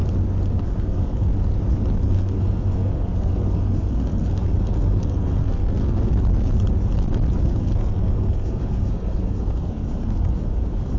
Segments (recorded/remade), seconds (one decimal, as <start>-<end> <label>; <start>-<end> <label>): 0.0-0.6 recorded; 0.6-1.3 remade; 1.3-2.0 recorded; 2.0-6.1 remade; 6.1-7.4 recorded; 7.4-11.0 remade